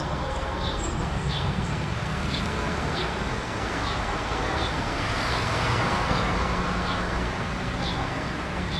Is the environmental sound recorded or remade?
remade